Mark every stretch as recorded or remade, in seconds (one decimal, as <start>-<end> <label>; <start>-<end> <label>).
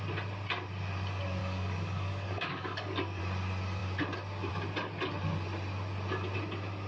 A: 0.0-1.4 recorded; 1.4-3.2 remade; 3.2-6.9 recorded